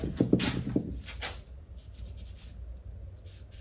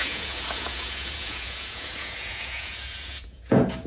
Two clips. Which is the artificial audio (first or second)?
second